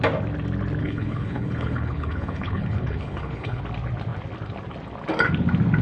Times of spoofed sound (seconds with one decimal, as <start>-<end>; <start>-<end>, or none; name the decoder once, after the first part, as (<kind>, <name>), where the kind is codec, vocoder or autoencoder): 0.8-3.6 (codec, HILCodec)